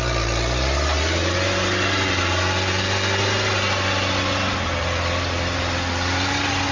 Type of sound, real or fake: real